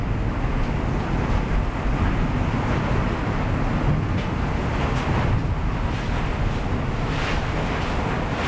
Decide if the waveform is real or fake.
real